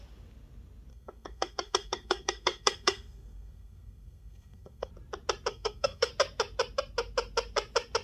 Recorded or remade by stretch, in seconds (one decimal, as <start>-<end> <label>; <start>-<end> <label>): 0.0-0.9 recorded; 0.9-4.9 remade; 4.9-5.5 recorded; 5.5-6.1 remade; 6.1-8.0 recorded